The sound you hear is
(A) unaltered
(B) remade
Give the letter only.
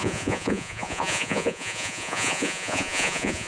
B